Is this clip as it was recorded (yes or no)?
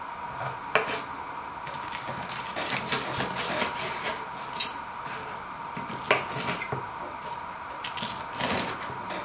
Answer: yes